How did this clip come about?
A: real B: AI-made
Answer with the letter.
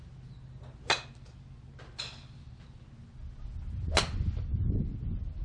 A